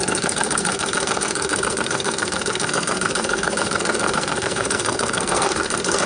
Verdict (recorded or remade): remade